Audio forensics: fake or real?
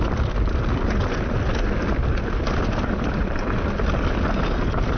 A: real